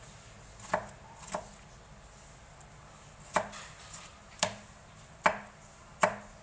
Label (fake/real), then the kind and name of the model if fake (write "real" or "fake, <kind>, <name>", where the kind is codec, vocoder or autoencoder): real